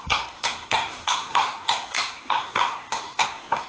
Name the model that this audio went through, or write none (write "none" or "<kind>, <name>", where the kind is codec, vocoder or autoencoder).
codec, SNAC